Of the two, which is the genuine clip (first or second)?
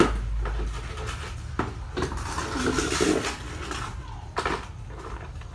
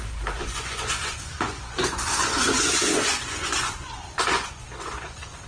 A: first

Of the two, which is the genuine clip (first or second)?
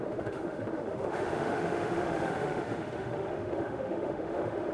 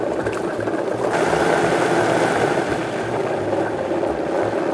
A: second